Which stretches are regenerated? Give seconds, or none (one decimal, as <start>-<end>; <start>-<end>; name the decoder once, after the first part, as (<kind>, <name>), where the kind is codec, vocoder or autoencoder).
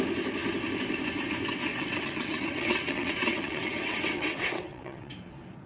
1.7-5.1 (vocoder, WaveNeXt)